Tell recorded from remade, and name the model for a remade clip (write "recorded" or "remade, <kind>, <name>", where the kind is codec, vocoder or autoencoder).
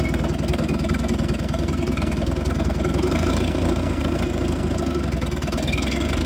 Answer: remade, codec, SNAC